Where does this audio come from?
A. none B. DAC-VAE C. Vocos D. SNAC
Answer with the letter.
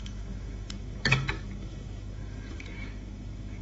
B